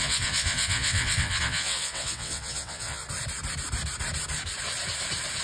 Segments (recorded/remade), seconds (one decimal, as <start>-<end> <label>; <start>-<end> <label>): 0.0-3.0 remade; 3.0-5.4 recorded